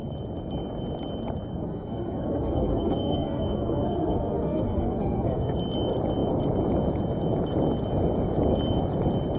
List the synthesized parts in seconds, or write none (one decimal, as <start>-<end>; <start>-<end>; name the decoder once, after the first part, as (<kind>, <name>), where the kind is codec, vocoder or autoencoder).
1.5-5.5 (codec, SNAC)